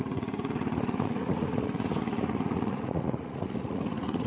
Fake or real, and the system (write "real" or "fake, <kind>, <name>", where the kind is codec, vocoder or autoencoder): fake, vocoder, Vocos